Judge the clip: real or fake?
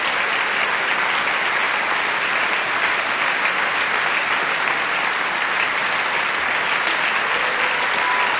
real